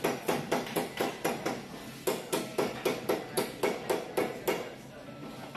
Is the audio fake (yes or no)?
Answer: no